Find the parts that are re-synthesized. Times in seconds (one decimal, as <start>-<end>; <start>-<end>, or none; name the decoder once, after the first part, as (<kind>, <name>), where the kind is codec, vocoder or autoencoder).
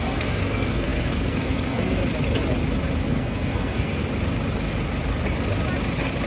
0.0-2.0 (codec, SNAC); 3.1-4.0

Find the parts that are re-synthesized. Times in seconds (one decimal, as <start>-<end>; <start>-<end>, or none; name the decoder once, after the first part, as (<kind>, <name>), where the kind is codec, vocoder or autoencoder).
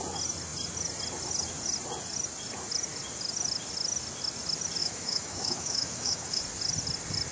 4.8-6.4 (autoencoder, DAC-VAE)